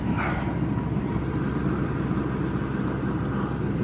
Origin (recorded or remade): recorded